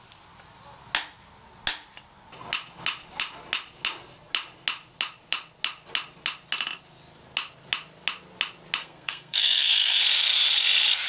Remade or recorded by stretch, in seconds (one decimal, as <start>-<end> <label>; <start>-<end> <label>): 0.0-8.8 recorded; 8.8-10.0 remade; 10.0-11.1 recorded